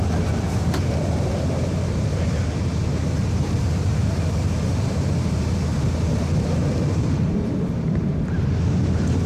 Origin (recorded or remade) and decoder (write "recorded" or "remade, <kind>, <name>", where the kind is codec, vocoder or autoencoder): remade, vocoder, BigVGAN v2